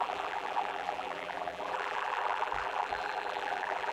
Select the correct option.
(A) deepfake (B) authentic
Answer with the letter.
A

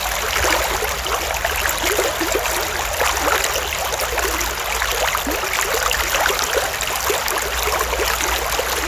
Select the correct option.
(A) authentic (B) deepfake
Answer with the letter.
A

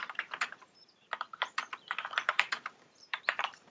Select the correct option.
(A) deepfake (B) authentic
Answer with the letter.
A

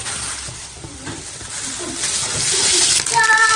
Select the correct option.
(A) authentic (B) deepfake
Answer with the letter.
B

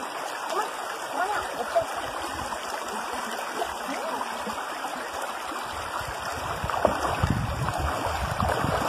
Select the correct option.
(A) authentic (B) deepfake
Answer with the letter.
B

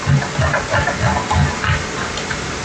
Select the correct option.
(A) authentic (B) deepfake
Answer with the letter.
A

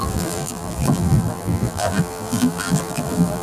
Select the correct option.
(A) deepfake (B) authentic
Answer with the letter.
A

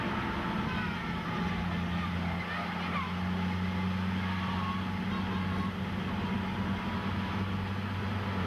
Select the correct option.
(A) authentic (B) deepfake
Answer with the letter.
A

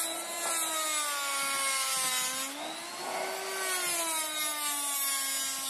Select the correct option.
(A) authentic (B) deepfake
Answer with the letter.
A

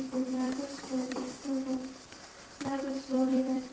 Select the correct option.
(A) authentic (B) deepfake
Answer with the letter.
B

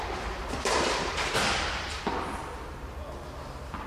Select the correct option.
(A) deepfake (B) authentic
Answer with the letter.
B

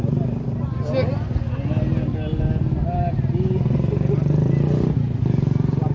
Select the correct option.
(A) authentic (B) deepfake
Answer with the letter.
A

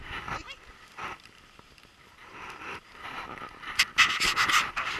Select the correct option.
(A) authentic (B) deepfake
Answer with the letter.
A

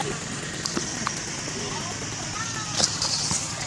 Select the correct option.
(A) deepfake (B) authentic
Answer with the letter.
B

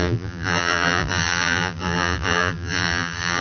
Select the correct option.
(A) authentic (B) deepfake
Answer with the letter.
B